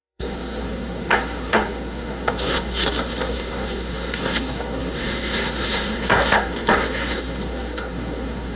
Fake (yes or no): yes